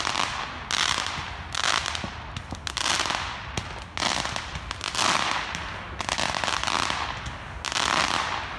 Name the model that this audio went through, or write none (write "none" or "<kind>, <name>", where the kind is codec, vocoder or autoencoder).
none